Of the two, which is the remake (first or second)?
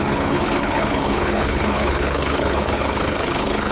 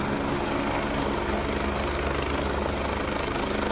first